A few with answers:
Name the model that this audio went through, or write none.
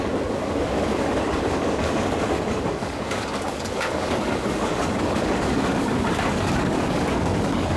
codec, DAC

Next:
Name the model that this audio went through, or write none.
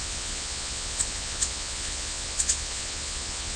vocoder, Vocos